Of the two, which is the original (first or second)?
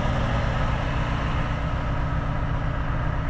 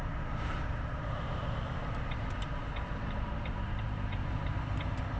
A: first